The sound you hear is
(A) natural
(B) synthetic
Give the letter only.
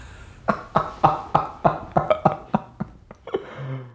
A